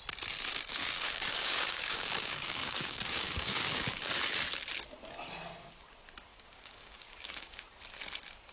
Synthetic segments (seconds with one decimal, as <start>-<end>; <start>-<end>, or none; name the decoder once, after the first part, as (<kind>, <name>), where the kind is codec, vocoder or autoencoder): 0.5-4.1 (codec, DAC); 6.3-7.7